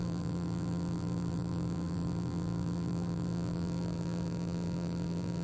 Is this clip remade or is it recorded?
remade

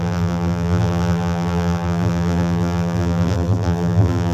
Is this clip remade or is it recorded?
remade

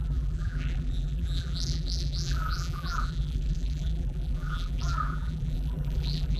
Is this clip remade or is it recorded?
remade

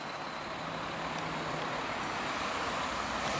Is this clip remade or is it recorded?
recorded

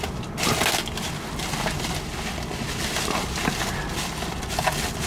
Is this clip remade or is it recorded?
recorded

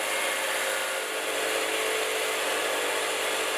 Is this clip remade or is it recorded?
recorded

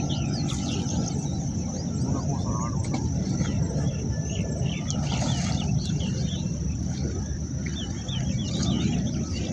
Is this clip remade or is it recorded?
remade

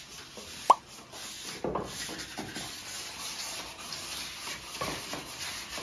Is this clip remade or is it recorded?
recorded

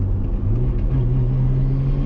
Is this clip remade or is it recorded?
recorded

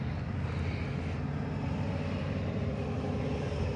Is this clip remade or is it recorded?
recorded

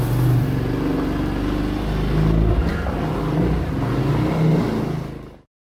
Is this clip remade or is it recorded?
recorded